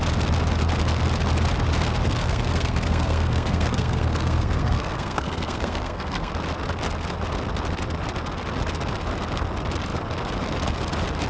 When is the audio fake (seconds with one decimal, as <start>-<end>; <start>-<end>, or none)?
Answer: 2.2-6.3

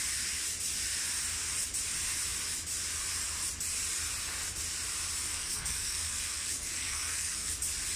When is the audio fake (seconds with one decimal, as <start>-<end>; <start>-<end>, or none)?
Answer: 5.3-7.5

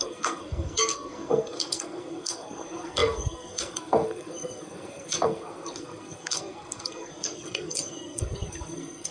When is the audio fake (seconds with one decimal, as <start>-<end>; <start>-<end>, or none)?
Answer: 0.0-9.1

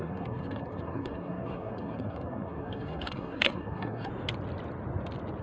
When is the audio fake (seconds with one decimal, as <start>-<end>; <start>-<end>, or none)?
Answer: 0.0-4.1